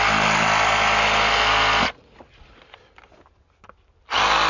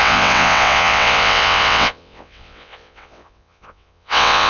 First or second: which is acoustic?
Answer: first